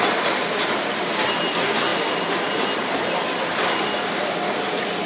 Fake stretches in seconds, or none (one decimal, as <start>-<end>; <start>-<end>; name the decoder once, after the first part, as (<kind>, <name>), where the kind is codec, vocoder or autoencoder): none